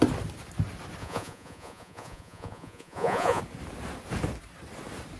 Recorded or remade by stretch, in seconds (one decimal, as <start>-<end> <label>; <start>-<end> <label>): 0.0-1.0 recorded; 1.0-3.4 remade; 3.4-5.2 recorded